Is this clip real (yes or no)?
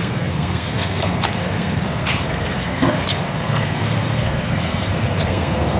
no